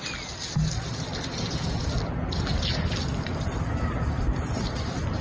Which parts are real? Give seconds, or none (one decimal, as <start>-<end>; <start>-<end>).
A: 0.0-5.2